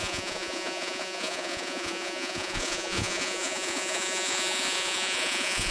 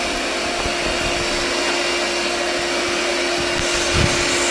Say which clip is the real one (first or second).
second